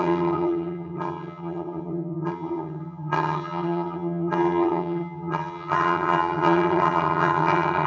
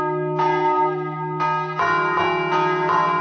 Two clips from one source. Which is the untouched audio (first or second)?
second